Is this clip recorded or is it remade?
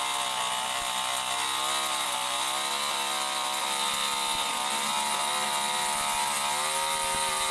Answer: recorded